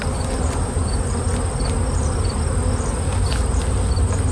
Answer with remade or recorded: recorded